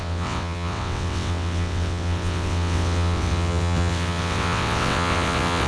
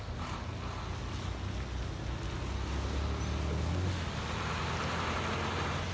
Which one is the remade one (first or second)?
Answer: first